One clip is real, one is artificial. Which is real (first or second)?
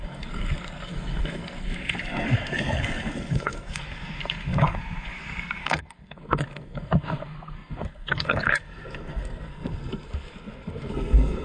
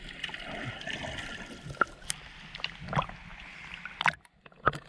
second